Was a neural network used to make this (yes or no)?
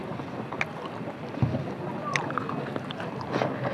no